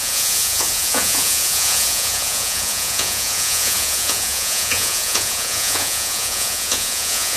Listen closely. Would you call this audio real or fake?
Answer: fake